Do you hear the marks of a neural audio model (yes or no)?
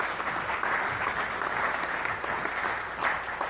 no